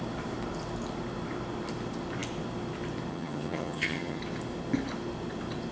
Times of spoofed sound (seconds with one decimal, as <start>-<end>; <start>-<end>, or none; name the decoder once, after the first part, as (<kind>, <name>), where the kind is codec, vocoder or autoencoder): 3.1-4.2 (vocoder, HiFi-GAN)